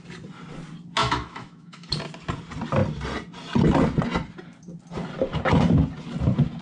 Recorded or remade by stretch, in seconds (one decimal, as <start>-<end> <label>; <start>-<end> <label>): 0.0-1.0 recorded; 1.0-1.9 remade; 1.9-6.6 recorded